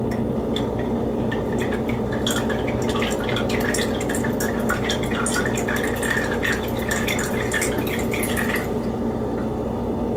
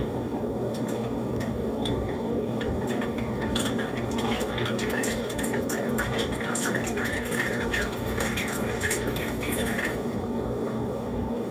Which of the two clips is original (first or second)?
first